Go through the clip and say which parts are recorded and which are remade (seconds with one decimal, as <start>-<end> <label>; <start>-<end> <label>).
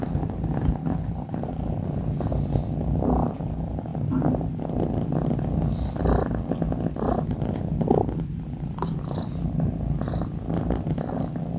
0.0-0.8 recorded; 0.8-1.3 remade; 1.3-11.6 recorded